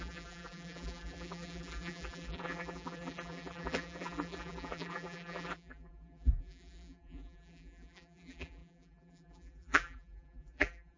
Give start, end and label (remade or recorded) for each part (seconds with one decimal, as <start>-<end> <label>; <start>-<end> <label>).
0.0-11.0 remade

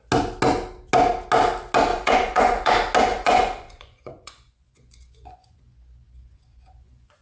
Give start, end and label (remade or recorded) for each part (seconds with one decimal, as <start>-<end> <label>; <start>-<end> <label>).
0.0-1.9 recorded; 1.9-2.7 remade; 2.7-3.1 recorded; 3.1-7.2 remade